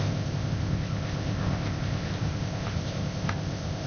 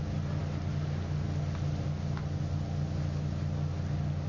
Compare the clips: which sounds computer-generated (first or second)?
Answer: first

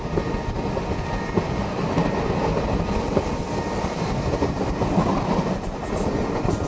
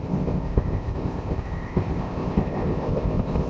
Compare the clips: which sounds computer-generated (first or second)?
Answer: second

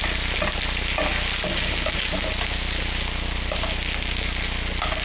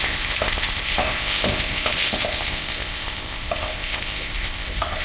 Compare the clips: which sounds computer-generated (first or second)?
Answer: second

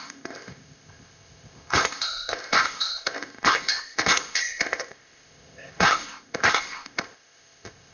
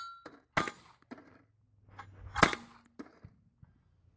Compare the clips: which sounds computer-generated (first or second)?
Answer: first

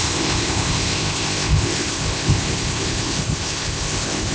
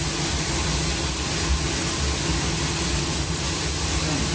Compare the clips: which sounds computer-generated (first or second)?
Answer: first